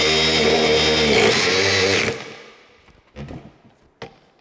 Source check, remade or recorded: recorded